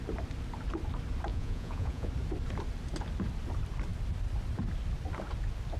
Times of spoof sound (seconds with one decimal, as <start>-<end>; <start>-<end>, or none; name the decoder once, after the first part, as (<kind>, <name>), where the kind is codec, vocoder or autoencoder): 1.3-2.1 (vocoder, Vocos)